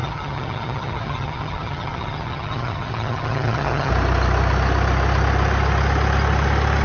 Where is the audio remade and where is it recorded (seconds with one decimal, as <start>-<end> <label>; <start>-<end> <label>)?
0.0-3.9 remade; 3.9-6.8 recorded